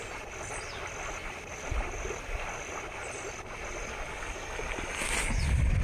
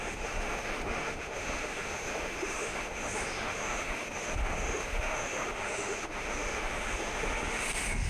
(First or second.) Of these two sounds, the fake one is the second